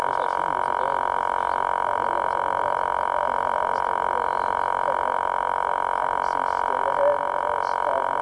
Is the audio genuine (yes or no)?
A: yes